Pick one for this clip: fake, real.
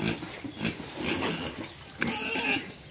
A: real